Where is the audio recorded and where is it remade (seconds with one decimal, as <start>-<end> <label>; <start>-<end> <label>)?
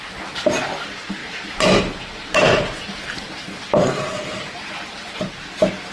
0.0-1.2 recorded; 1.2-4.7 remade; 4.7-5.9 recorded